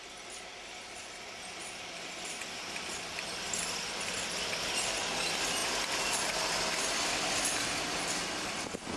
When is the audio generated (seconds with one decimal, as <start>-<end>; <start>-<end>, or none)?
none